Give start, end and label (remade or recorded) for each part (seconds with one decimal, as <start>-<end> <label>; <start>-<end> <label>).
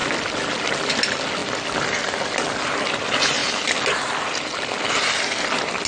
0.0-5.9 recorded